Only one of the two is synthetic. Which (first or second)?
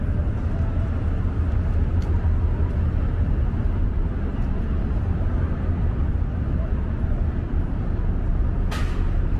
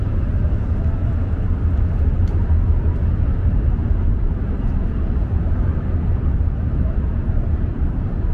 second